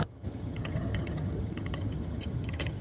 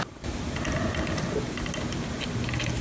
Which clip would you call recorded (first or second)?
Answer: second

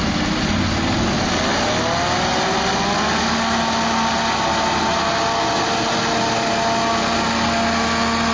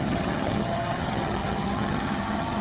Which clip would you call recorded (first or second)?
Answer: first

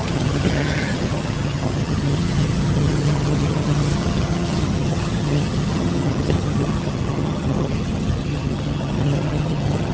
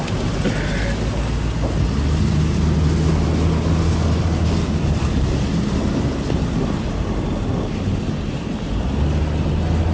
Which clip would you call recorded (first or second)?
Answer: second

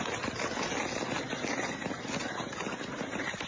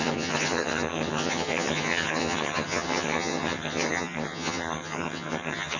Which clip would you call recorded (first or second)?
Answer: first